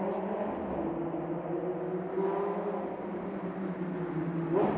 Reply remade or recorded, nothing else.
recorded